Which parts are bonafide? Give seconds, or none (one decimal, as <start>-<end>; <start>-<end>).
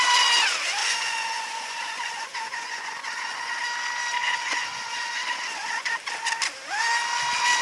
0.0-0.8; 3.5-4.1; 5.9-7.6